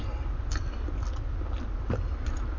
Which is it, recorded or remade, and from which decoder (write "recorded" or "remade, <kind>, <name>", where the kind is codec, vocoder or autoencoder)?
recorded